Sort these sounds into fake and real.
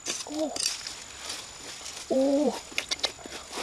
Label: real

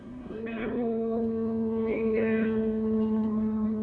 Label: fake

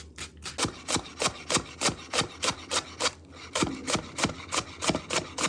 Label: real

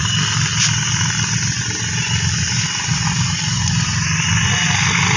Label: real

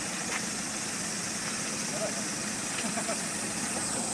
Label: real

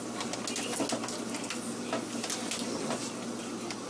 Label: real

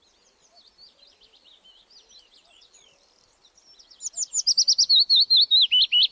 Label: real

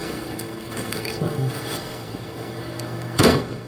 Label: fake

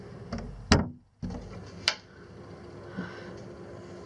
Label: real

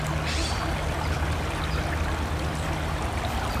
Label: real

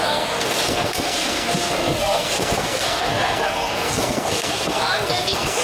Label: fake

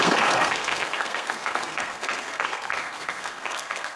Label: fake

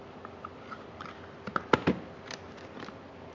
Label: real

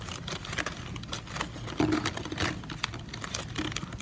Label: real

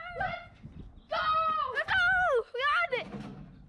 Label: real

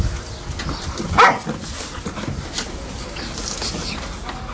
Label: real